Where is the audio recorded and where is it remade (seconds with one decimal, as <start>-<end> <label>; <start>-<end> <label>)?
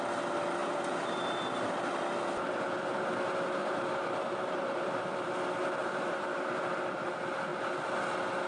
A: 0.0-0.6 recorded; 0.6-1.7 remade; 1.7-3.6 recorded; 3.6-5.3 remade; 5.3-5.8 recorded; 5.8-7.1 remade; 7.1-8.5 recorded